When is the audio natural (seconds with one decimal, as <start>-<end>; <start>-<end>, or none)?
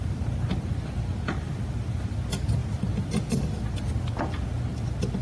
0.0-5.2